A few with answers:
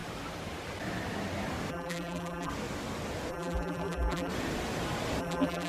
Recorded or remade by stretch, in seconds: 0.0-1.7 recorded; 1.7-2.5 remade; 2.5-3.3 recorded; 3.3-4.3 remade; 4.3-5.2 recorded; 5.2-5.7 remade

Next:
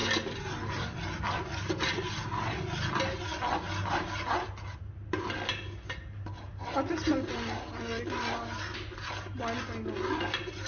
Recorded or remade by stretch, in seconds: 0.0-10.7 recorded

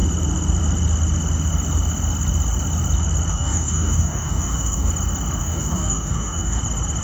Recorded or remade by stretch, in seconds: 0.0-3.3 recorded; 3.3-4.9 remade; 4.9-5.4 recorded; 5.4-6.6 remade; 6.6-7.0 recorded

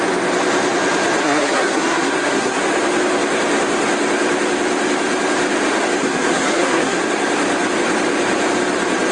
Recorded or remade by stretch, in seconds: 0.0-1.2 recorded; 1.2-2.6 remade; 2.6-6.0 recorded; 6.0-7.0 remade; 7.0-9.1 recorded

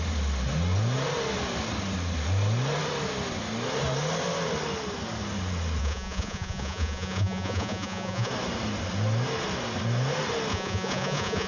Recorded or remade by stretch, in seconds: 0.0-5.8 recorded; 5.8-8.3 remade; 8.3-10.5 recorded; 10.5-11.5 remade

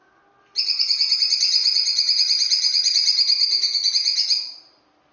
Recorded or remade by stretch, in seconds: 0.0-1.6 remade; 1.6-3.9 recorded; 3.9-5.1 remade